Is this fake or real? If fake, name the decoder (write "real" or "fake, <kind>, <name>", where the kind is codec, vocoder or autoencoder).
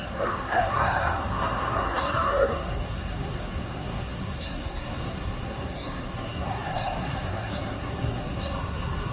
fake, codec, SNAC